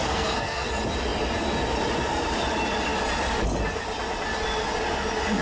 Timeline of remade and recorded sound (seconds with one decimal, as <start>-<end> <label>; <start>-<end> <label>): 0.0-0.7 remade; 0.7-5.4 recorded